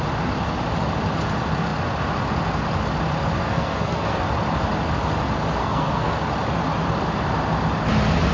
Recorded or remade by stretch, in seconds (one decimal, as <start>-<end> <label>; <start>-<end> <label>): 0.0-3.4 recorded; 3.4-4.2 remade; 4.2-5.6 recorded; 5.6-6.2 remade; 6.2-8.3 recorded